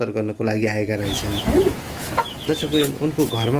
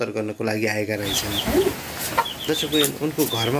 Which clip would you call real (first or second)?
second